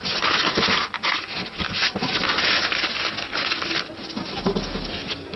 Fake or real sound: real